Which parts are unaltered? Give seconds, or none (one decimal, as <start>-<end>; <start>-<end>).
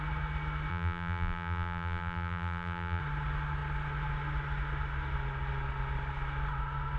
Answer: 0.0-0.7; 3.0-7.0